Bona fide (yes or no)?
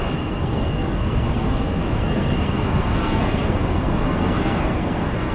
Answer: no